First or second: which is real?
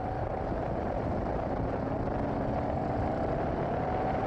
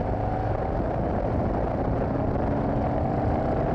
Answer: second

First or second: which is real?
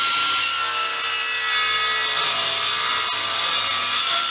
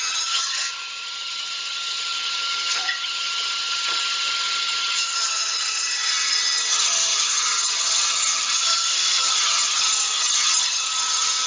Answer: first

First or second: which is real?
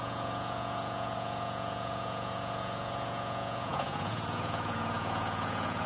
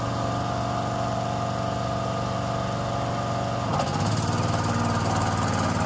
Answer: second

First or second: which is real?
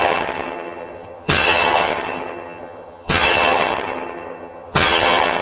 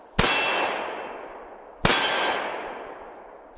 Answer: second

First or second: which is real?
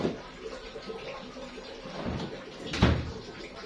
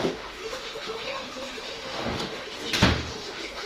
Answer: first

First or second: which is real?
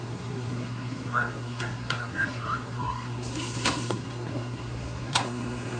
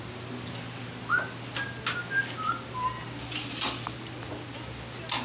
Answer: second